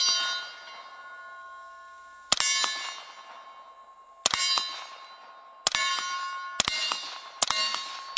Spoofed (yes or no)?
no